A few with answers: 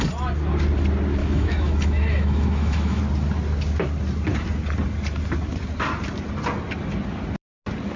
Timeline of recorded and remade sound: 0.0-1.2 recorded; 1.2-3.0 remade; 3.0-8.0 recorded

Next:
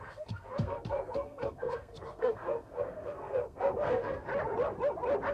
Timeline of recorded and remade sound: 0.0-4.3 remade; 4.3-5.3 recorded

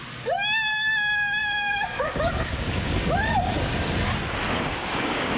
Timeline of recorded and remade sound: 0.0-1.4 recorded; 1.4-3.1 remade; 3.1-4.4 recorded; 4.4-5.4 remade

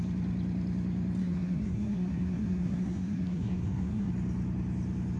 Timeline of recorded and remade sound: 0.0-1.2 recorded; 1.2-4.1 remade; 4.1-5.2 recorded

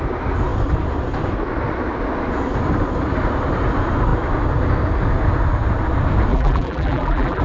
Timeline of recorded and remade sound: 0.0-6.3 recorded; 6.3-7.4 remade

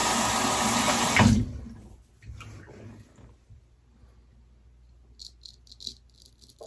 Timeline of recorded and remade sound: 0.0-6.7 recorded

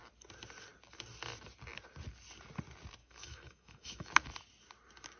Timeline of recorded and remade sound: 0.0-3.0 recorded; 3.0-4.1 remade; 4.1-5.2 recorded

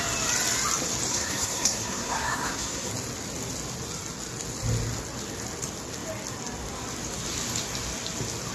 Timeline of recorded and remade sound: 0.0-1.1 recorded; 1.1-2.9 remade; 2.9-8.5 recorded